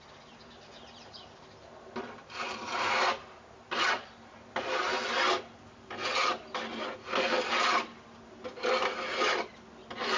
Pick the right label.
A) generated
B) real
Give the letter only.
B